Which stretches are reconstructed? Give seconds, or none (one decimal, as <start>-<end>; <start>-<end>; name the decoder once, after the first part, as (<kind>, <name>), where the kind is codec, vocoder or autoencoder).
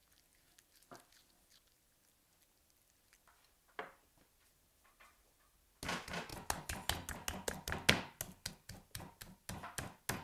none